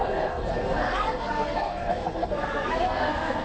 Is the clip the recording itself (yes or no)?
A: no